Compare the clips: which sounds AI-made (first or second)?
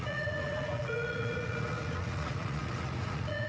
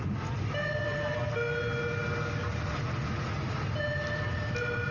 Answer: first